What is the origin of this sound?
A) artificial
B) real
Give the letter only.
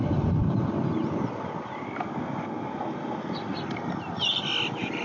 B